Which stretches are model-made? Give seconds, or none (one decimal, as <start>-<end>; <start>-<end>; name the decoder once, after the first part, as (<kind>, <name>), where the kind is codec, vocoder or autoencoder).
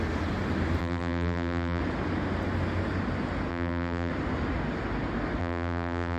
0.8-1.8 (vocoder, BigVGAN v2); 3.5-4.1; 5.4-6.2